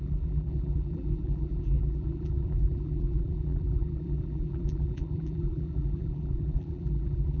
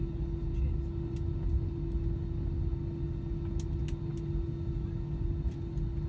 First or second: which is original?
second